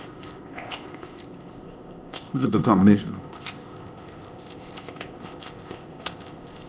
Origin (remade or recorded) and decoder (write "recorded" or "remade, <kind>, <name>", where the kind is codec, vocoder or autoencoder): remade, codec, ZipCodec